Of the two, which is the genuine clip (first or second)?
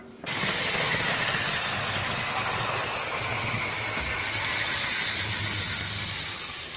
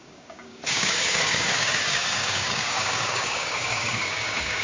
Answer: first